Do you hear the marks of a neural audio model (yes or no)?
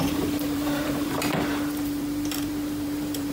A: yes